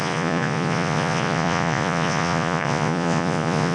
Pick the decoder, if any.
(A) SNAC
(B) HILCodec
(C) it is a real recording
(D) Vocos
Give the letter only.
D